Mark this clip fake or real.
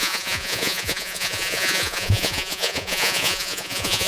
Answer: fake